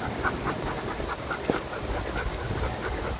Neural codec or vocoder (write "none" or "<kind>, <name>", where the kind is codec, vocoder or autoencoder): none